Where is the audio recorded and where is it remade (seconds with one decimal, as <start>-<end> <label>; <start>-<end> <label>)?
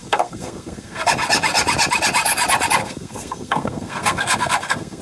0.0-1.1 remade; 1.1-2.8 recorded; 2.8-5.0 remade